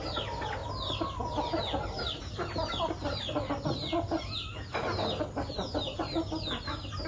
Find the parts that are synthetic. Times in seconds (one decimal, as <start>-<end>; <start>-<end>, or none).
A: none

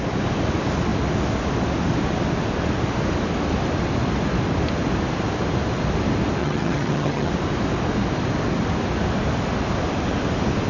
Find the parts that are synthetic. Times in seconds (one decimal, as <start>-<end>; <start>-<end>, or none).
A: 6.4-7.3

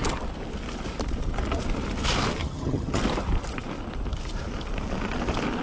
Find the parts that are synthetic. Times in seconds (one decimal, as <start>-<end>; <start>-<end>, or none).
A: 2.4-3.0